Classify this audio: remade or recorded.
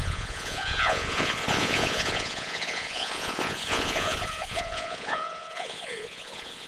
remade